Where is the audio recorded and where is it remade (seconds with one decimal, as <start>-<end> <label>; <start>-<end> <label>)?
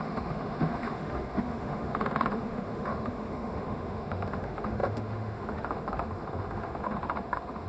0.0-7.7 remade